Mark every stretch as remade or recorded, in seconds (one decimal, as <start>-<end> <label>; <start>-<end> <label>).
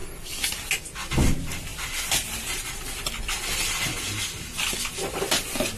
0.0-5.8 recorded